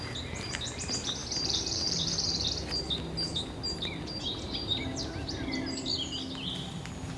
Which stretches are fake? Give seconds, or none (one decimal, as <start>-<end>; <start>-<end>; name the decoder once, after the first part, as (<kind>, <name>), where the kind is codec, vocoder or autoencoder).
1.2-2.5 (vocoder, BigVGAN v2)